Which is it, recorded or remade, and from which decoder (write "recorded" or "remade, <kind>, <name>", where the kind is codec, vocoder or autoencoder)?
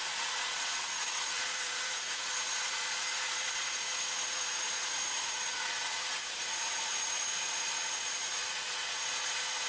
remade, vocoder, Vocos